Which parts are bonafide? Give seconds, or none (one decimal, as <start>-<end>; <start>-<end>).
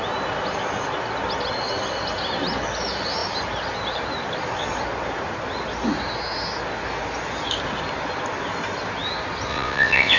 0.0-9.5